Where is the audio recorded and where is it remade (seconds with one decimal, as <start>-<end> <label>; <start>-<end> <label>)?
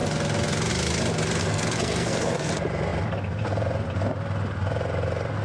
0.0-1.4 recorded; 1.4-2.5 remade; 2.5-5.4 recorded